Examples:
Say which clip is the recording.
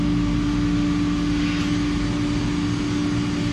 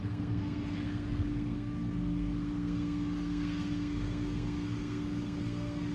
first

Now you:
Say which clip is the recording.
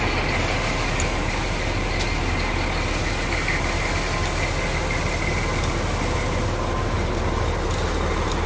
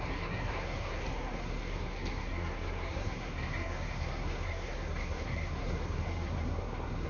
first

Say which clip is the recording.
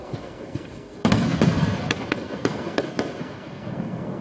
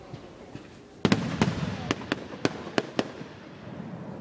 second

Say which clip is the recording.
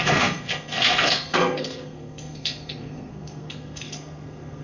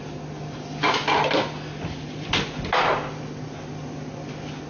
second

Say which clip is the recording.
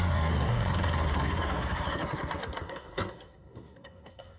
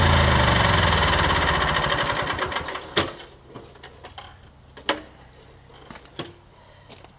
second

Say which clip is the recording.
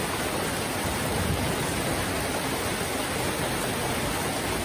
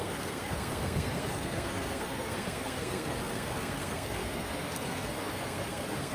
first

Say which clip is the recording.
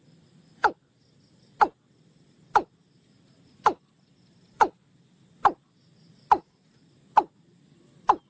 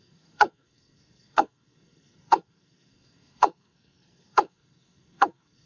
first